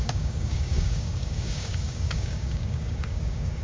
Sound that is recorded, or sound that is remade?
remade